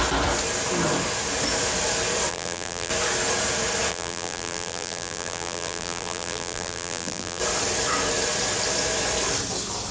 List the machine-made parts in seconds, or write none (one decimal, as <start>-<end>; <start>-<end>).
2.3-2.9; 3.9-7.4